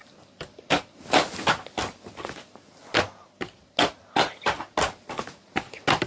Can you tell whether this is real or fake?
real